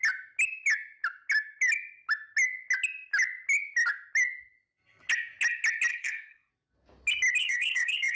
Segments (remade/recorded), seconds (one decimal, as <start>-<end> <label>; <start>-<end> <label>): 0.0-5.9 recorded; 5.9-6.5 remade; 6.5-7.4 recorded; 7.4-8.2 remade